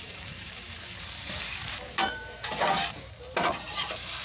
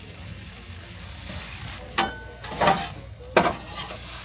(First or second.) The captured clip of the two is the second